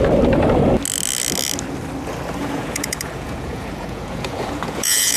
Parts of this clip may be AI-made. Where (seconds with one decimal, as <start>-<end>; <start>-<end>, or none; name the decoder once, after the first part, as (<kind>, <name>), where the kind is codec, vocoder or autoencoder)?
2.4-5.2 (vocoder, Vocos)